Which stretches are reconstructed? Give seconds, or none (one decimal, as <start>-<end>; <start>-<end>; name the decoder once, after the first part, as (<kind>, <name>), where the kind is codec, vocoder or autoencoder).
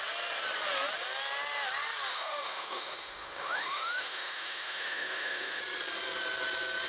2.1-5.6 (autoencoder, DAC-VAE)